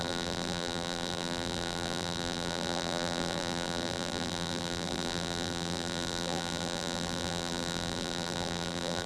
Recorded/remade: remade